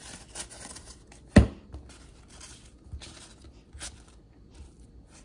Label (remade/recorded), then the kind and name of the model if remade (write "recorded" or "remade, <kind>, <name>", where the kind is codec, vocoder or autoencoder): recorded